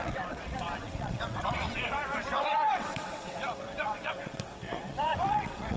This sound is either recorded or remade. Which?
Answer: remade